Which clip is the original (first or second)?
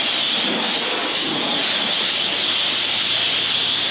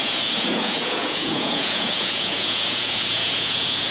first